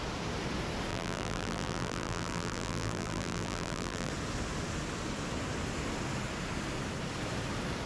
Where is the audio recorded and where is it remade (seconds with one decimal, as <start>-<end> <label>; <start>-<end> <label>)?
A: 0.0-0.9 recorded; 0.9-4.1 remade; 4.1-7.9 recorded